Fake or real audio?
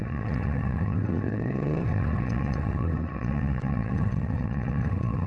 fake